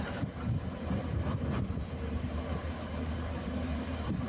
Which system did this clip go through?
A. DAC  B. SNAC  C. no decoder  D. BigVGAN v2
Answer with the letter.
D